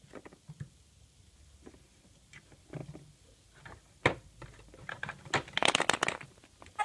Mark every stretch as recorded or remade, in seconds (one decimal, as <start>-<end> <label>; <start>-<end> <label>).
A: 0.0-6.8 recorded